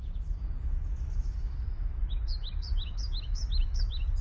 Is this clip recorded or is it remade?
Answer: remade